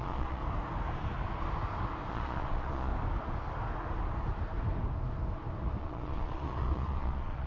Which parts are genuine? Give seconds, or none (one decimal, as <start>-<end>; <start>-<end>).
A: 0.4-2.1; 2.9-5.8